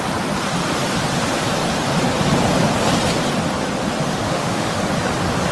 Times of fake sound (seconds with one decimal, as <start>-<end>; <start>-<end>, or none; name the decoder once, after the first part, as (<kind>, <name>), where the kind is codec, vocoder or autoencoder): 4.1-4.7 (autoencoder, DAC-VAE)